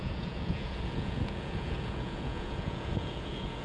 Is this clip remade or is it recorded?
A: remade